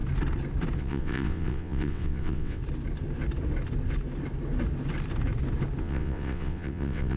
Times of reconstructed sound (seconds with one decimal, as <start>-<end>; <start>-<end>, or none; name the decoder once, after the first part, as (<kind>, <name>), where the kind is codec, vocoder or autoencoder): 0.8-2.6 (vocoder, WaveNeXt); 5.8-7.2